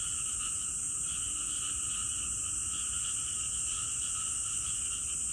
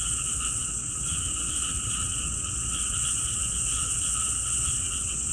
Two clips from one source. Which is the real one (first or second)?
first